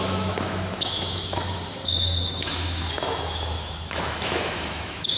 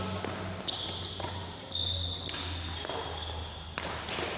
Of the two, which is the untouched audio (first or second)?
second